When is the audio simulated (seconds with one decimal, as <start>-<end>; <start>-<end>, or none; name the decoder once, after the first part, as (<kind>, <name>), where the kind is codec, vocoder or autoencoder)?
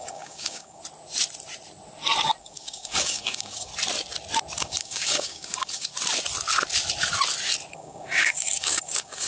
0.0-0.8 (codec, DAC); 2.4-3.7; 4.6-5.9; 7.7-9.3